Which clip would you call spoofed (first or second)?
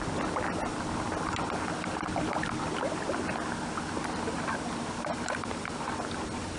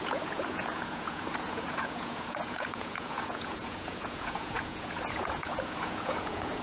second